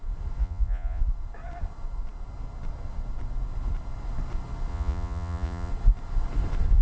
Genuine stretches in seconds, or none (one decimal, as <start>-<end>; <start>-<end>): 0.0-0.4; 1.0-4.7; 5.7-6.8